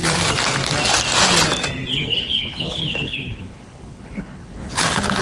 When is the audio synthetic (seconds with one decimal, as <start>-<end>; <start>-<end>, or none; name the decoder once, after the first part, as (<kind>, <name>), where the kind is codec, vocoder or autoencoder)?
1.9-5.2 (codec, HILCodec)